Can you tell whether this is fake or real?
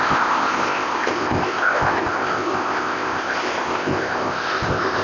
fake